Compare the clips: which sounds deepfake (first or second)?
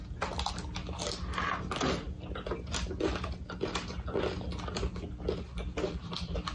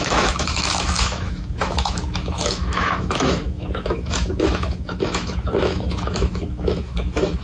second